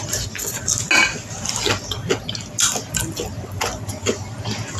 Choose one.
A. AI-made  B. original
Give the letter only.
B